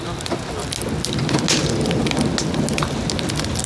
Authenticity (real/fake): real